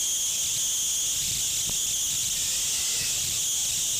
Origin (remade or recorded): recorded